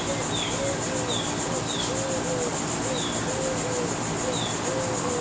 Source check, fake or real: real